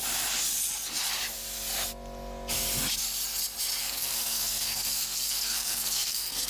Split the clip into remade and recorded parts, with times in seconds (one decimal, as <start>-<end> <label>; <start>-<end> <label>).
0.0-3.8 recorded; 3.8-6.5 remade